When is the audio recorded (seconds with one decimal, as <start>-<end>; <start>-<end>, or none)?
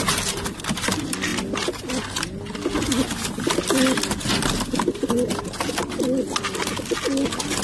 0.0-7.6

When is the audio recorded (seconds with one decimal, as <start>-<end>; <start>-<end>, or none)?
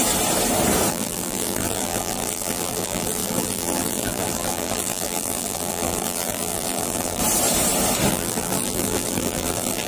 0.0-0.9; 7.2-8.1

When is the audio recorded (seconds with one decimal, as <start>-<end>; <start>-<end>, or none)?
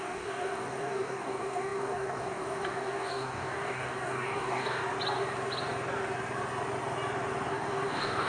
4.8-7.5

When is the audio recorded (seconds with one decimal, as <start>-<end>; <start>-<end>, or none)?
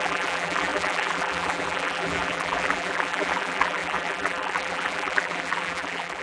none